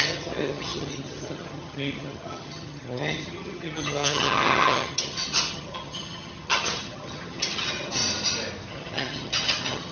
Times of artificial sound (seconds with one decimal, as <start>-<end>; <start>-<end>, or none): 0.0-8.0; 8.7-9.9